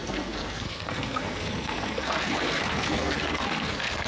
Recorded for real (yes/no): no